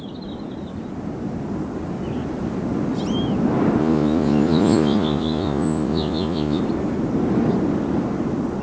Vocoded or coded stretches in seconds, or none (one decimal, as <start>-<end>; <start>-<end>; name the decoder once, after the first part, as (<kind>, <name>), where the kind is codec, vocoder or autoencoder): 3.8-6.6 (vocoder, Vocos)